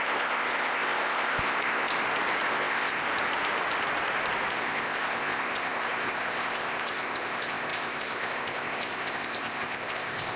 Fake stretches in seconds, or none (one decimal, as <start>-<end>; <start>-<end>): 0.0-1.9; 2.5-3.0; 4.5-10.4